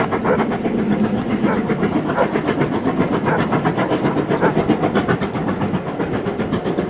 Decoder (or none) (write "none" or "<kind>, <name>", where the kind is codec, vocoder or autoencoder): none